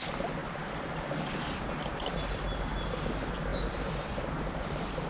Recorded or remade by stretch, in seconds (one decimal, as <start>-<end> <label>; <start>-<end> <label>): 0.0-3.5 recorded; 3.5-5.1 remade